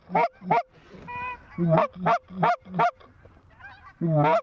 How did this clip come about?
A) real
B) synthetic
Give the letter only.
A